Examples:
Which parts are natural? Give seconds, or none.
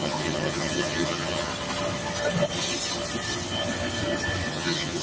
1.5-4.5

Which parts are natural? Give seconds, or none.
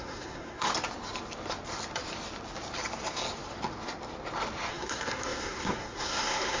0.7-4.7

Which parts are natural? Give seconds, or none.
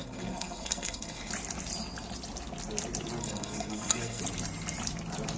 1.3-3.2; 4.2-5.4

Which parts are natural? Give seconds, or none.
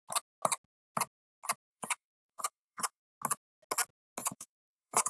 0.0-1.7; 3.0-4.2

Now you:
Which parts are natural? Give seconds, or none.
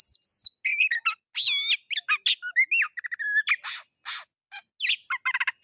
0.0-5.6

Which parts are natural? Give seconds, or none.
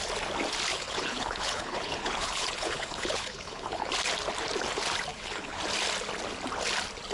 0.0-0.7; 3.9-5.1; 5.6-7.1